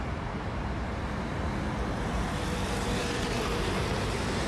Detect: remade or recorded remade